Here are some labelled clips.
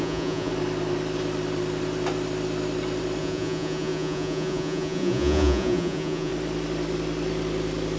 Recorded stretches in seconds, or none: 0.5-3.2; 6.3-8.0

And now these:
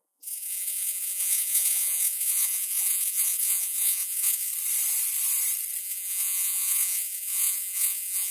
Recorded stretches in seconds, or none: 4.5-5.8

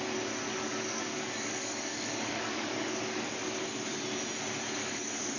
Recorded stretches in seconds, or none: 0.0-0.5; 3.6-4.8